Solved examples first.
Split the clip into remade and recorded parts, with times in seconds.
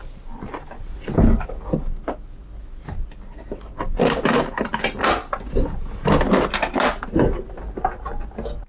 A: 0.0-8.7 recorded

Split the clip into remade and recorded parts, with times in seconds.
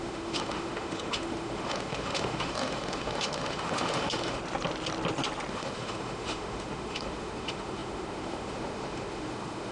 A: 0.0-4.4 remade; 4.4-5.5 recorded; 5.5-9.7 remade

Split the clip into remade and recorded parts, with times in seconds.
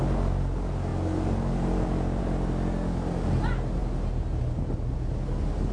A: 0.0-5.7 recorded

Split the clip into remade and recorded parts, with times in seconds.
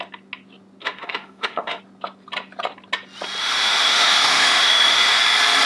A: 0.0-0.8 recorded; 0.8-1.8 remade; 1.8-3.4 recorded; 3.4-5.2 remade; 5.2-5.7 recorded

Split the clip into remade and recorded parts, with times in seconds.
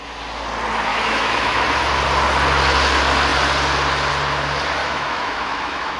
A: 0.0-0.9 recorded; 0.9-1.6 remade; 1.6-4.8 recorded; 4.8-6.0 remade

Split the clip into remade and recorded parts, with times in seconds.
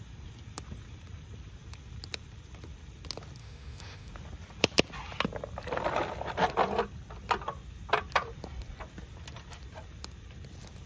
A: 0.0-3.4 recorded; 3.4-4.1 remade; 4.1-10.9 recorded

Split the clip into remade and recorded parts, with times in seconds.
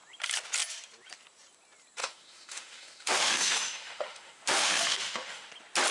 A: 0.0-2.0 recorded; 2.0-5.5 remade; 5.5-5.9 recorded